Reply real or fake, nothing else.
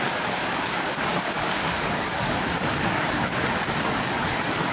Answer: fake